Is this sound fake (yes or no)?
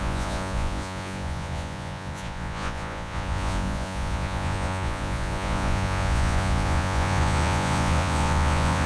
yes